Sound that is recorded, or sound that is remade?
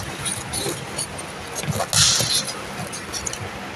recorded